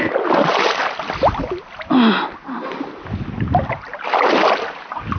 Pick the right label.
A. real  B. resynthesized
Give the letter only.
A